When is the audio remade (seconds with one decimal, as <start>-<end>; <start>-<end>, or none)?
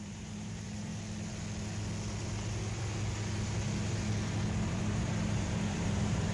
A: 0.0-0.9; 4.7-6.3